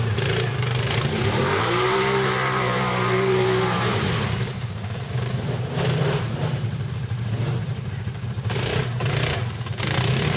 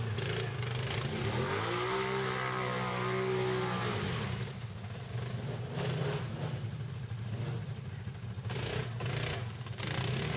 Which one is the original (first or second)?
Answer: second